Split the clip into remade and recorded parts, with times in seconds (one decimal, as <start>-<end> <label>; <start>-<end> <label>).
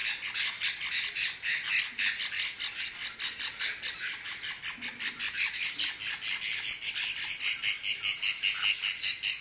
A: 0.0-9.4 recorded